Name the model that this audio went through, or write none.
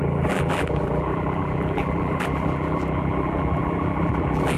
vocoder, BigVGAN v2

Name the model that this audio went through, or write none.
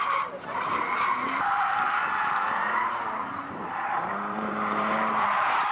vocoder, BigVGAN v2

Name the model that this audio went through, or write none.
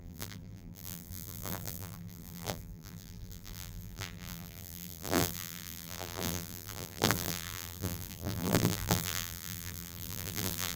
vocoder, BigVGAN v2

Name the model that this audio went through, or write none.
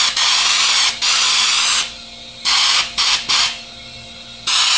none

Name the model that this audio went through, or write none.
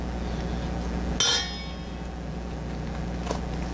none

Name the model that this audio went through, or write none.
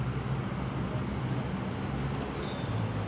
none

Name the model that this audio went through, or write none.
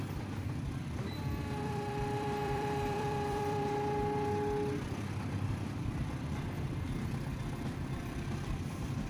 vocoder, BigVGAN v2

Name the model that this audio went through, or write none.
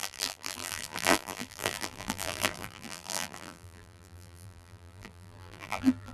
vocoder, BigVGAN v2